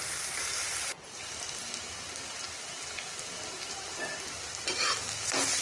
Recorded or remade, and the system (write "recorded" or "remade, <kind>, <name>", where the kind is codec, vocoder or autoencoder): recorded